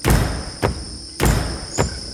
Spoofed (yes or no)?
yes